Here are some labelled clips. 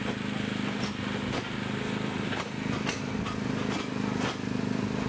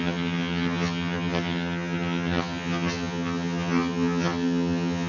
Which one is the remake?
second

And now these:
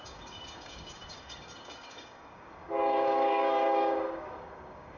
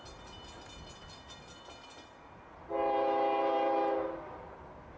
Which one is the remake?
first